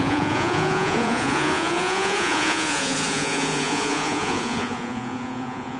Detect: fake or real fake